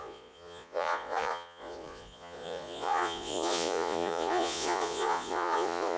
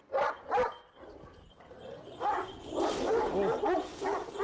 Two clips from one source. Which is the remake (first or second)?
first